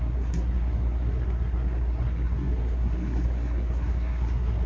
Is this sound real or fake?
fake